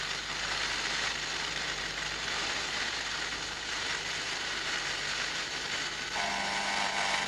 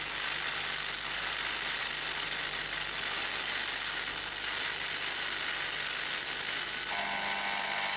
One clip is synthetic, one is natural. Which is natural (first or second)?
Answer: second